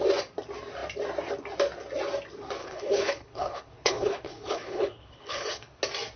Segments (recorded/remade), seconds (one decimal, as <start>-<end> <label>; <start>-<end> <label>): 0.0-2.6 recorded; 2.6-5.8 remade; 5.8-6.2 recorded